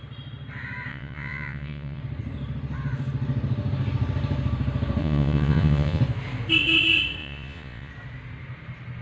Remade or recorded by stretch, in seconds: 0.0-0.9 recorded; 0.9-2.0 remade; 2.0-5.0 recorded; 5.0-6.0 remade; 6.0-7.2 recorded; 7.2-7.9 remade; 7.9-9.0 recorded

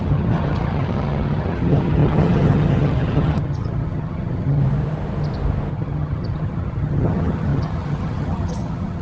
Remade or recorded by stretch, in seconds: 0.0-4.6 remade; 4.6-5.7 recorded; 5.7-9.0 remade

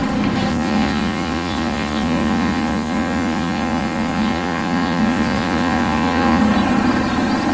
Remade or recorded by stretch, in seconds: 0.0-0.5 recorded; 0.5-6.4 remade; 6.4-7.5 recorded

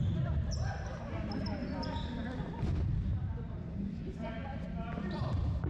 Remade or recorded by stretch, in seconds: 0.0-1.6 recorded; 1.6-3.1 remade; 3.1-4.4 recorded; 4.4-5.7 remade

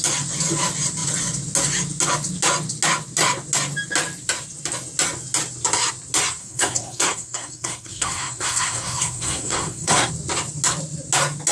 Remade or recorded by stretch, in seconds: 0.0-6.4 recorded; 6.4-10.1 remade; 10.1-11.5 recorded

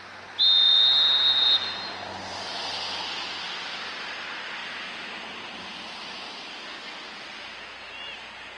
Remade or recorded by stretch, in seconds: 0.0-8.6 recorded

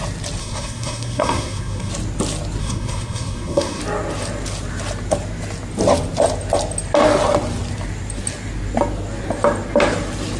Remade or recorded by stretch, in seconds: 0.0-0.4 recorded; 0.4-1.9 remade; 1.9-2.6 recorded; 2.6-3.8 remade; 3.8-10.4 recorded